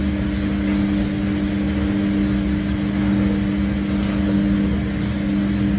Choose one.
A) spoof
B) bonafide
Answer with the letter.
B